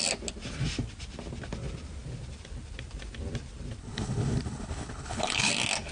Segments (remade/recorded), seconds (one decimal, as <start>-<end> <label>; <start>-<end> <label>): 0.0-3.8 recorded; 3.8-5.5 remade; 5.5-5.9 recorded